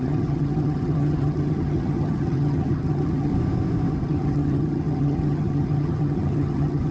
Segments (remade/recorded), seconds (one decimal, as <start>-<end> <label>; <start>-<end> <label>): 0.0-3.3 remade; 3.3-3.9 recorded; 3.9-6.9 remade